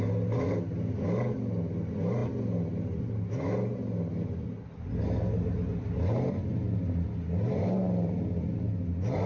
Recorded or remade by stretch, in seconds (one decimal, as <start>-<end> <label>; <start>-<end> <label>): 0.0-9.3 recorded